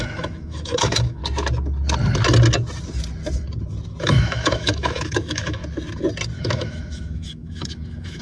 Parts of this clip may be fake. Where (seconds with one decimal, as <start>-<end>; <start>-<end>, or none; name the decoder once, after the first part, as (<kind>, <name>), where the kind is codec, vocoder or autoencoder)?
0.0-1.2 (autoencoder, DAC-VAE); 4.0-5.6; 6.4-8.2